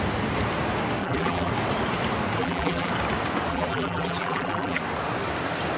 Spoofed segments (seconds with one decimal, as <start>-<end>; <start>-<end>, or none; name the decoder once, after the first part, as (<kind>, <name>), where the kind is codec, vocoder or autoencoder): 1.0-1.5 (vocoder, BigVGAN v2); 2.4-2.9; 3.5-4.8